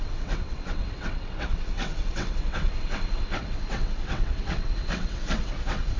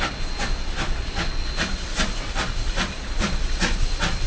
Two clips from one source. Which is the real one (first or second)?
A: second